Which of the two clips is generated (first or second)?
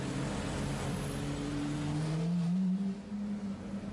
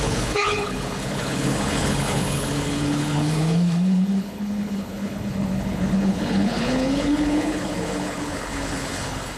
second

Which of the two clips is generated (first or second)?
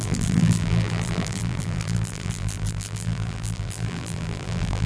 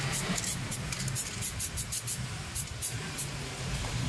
first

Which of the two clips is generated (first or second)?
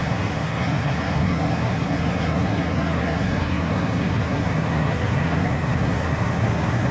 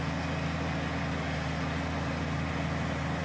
first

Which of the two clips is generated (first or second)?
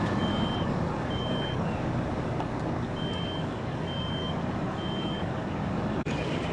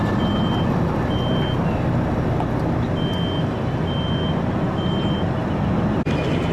first